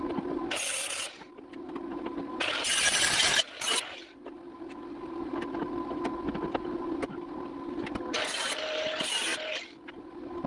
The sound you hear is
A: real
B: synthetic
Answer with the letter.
A